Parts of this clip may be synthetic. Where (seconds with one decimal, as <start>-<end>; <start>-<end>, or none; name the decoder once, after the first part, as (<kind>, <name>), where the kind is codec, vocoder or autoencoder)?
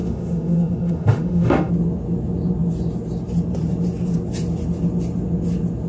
0.0-1.7 (autoencoder, DAC-VAE)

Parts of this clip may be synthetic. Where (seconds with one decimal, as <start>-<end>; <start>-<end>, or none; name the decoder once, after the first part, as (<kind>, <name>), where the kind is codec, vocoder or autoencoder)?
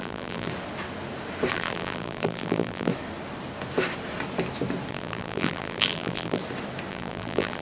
0.0-0.5 (vocoder, BigVGAN v2); 1.5-2.9; 4.9-6.4; 6.9-7.6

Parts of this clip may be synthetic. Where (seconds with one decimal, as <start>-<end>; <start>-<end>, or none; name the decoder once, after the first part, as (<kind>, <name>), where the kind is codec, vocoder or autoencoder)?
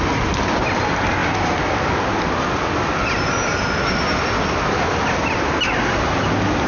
none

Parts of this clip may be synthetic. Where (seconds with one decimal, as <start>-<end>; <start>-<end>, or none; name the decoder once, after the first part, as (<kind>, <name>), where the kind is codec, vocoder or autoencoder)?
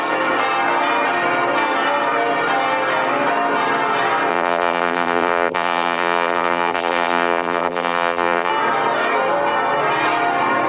4.3-8.5 (vocoder, BigVGAN v2)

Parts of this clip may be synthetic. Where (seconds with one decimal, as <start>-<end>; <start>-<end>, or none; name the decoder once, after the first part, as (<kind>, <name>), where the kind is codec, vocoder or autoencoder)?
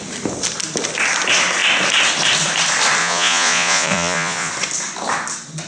3.0-4.5 (vocoder, Vocos)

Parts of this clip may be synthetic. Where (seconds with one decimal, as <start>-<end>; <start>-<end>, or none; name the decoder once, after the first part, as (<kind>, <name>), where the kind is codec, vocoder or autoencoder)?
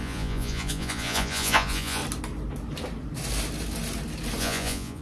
0.0-2.0 (vocoder, Vocos); 4.4-5.0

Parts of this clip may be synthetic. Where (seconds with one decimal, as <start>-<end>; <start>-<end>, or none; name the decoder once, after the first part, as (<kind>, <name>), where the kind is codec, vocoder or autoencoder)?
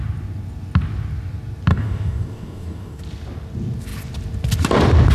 1.7-3.0 (codec, DAC)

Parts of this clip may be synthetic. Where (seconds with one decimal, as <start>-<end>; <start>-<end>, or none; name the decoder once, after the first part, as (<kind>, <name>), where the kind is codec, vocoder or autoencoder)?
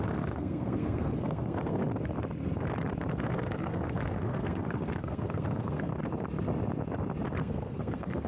0.0-1.8 (codec, SNAC); 3.1-5.9; 7.4-8.3